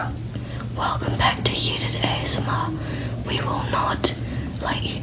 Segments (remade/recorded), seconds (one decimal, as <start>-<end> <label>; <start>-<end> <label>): 0.0-5.0 recorded